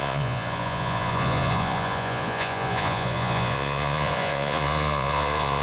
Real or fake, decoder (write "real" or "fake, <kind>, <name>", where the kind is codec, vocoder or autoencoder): fake, vocoder, Vocos